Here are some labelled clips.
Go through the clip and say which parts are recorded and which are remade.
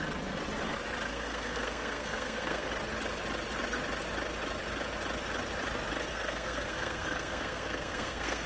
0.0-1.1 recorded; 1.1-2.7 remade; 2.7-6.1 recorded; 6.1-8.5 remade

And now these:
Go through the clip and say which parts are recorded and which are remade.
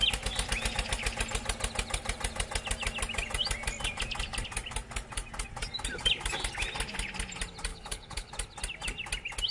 0.0-7.7 recorded; 7.7-8.3 remade; 8.3-9.5 recorded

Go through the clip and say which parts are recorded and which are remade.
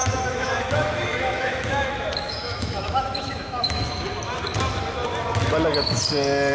0.0-3.9 remade; 3.9-6.5 recorded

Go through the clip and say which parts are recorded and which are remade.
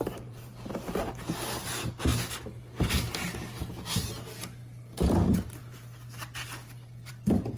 0.0-2.1 remade; 2.1-2.9 recorded; 2.9-5.6 remade; 5.6-7.1 recorded; 7.1-7.6 remade